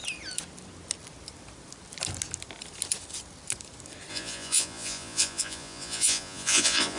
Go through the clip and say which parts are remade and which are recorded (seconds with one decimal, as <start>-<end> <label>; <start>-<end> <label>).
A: 0.0-4.1 recorded; 4.1-7.0 remade